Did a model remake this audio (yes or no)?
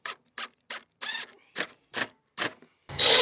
no